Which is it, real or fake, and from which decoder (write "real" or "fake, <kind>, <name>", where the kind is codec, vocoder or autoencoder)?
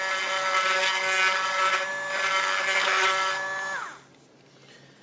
real